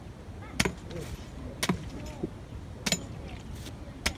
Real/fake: real